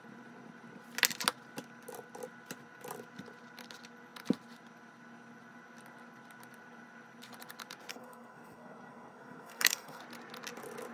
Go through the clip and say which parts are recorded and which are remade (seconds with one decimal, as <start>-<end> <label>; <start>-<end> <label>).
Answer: 0.0-7.9 recorded; 7.9-10.0 remade; 10.0-10.9 recorded